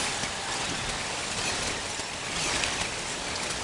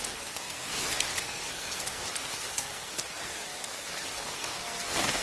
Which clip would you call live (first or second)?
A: first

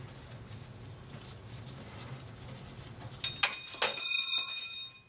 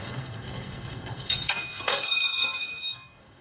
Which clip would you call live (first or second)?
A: first